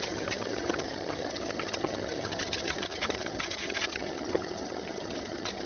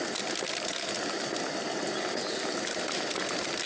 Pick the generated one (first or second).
first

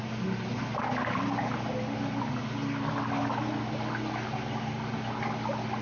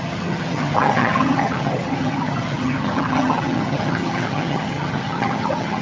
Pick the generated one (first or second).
second